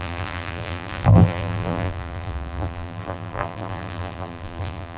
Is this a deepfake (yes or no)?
yes